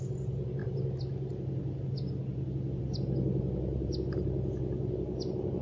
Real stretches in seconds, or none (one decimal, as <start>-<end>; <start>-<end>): 0.0-5.6